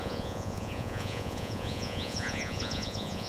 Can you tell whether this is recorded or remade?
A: remade